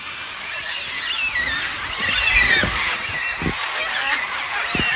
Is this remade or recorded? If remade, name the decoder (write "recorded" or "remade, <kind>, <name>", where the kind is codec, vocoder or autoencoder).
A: recorded